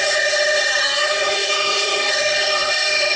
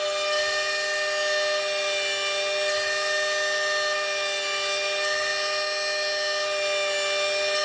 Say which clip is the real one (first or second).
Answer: second